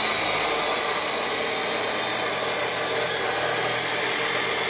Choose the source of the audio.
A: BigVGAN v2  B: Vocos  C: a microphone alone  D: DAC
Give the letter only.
C